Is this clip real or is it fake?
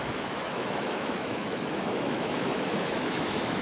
fake